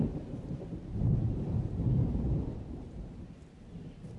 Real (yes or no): no